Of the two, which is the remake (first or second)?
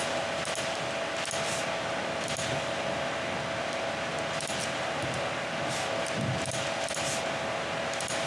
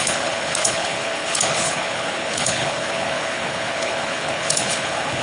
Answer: second